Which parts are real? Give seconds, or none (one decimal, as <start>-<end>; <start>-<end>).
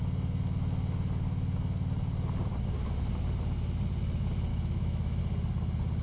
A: 0.0-4.5; 5.2-6.0